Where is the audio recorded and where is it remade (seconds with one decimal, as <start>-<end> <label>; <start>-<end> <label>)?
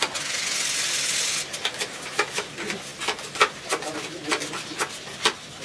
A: 0.0-5.6 recorded